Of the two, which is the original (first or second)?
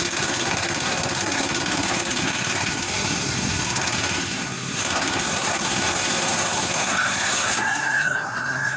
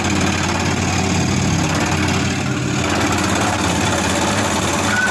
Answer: second